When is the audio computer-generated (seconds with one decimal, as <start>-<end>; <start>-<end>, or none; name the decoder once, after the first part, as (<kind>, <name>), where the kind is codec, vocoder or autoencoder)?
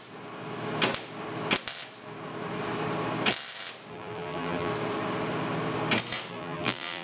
3.9-4.7 (vocoder, BigVGAN v2); 6.3-7.0